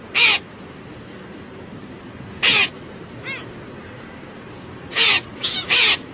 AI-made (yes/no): no